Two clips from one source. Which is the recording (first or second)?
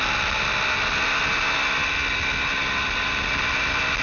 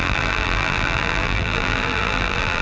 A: first